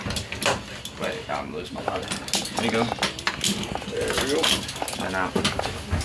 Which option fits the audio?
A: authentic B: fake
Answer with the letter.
A